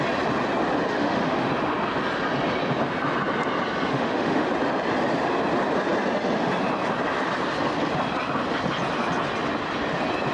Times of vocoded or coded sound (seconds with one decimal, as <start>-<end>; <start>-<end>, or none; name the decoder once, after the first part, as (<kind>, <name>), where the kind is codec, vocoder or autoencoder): 0.9-1.5 (autoencoder, DAC-VAE); 3.9-4.5